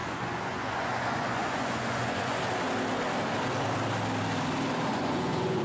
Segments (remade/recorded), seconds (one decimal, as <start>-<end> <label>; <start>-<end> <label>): 0.0-2.4 remade; 2.4-4.9 recorded; 4.9-5.6 remade